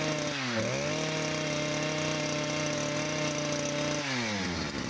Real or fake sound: real